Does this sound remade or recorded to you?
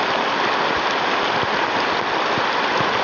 recorded